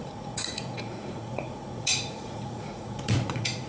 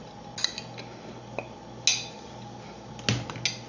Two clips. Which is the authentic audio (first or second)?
second